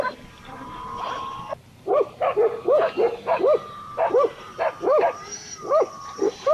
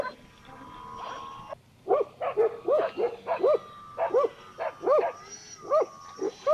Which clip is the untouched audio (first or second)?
second